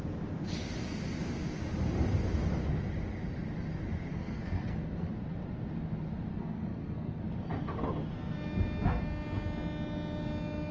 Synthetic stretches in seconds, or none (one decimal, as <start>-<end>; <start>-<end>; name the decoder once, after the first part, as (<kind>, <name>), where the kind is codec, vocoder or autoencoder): 4.1-5.1 (codec, SNAC); 6.3-7.2